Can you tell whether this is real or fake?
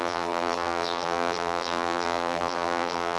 fake